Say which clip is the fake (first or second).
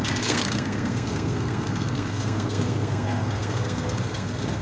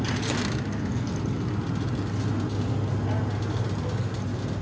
first